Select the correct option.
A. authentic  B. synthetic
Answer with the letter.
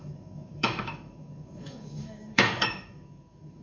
B